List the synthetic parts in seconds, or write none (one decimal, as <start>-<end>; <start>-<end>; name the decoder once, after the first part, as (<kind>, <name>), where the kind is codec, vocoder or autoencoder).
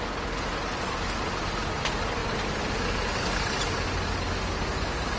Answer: none